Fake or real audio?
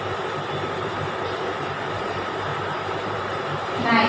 fake